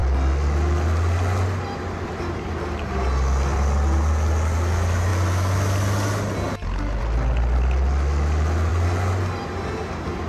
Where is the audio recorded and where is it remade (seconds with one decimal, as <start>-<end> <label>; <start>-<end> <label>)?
0.0-10.3 recorded